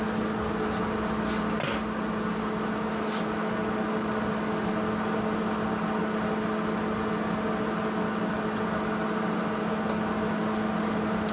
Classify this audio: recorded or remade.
recorded